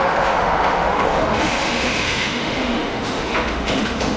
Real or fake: fake